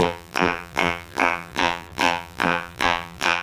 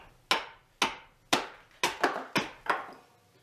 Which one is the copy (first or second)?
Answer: first